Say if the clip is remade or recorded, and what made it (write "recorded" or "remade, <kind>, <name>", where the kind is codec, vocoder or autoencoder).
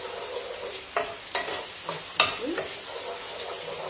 recorded